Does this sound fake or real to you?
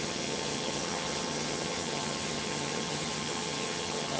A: fake